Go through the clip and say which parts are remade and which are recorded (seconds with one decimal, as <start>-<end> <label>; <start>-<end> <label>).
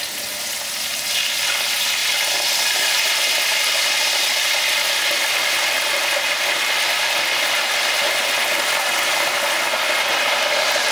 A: 0.0-2.0 recorded; 2.0-3.4 remade; 3.4-10.9 recorded